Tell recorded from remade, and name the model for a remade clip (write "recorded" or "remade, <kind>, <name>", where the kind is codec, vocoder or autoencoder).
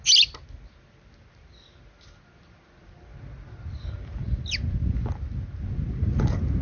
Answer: recorded